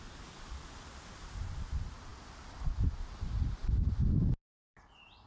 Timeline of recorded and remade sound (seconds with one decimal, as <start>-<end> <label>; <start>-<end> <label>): 0.0-5.3 remade